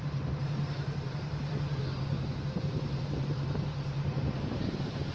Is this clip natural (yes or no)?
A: no